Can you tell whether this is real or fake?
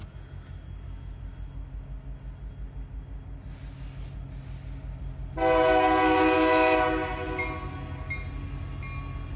real